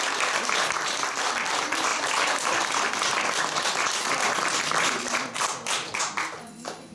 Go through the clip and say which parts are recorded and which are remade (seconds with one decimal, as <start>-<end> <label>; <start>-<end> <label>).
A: 0.0-6.9 recorded